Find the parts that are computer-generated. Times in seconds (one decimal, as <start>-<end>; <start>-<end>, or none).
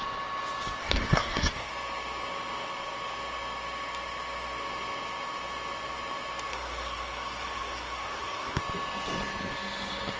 0.8-1.7; 6.5-8.6